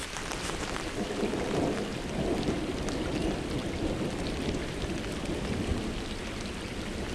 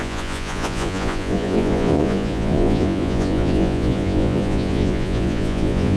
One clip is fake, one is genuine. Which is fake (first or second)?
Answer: second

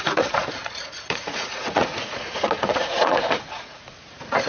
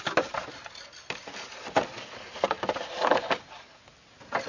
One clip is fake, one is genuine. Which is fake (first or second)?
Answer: first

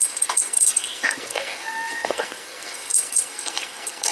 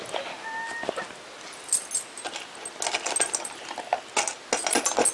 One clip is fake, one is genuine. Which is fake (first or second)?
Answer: first